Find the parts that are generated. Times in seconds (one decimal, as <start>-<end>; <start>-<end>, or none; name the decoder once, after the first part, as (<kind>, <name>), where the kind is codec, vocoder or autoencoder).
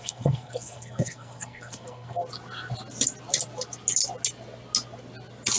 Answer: 0.0-2.2 (codec, SNAC)